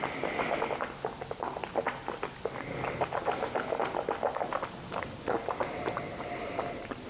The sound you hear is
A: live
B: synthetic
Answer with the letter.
A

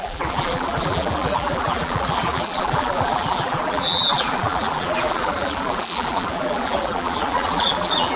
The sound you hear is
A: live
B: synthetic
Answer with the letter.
B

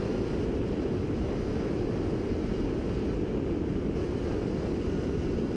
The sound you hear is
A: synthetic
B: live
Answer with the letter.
B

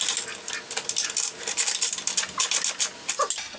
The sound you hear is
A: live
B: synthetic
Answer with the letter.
A